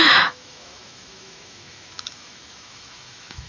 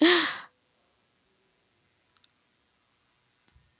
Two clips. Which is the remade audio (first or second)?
first